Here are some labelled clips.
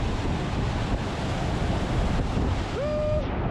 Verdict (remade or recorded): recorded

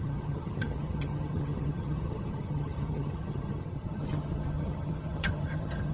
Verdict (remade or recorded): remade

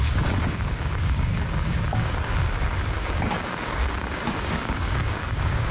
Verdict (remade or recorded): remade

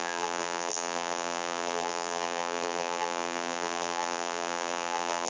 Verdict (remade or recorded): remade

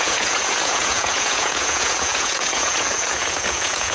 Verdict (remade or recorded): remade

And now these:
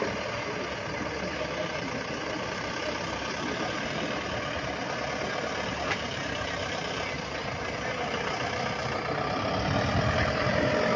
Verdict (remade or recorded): recorded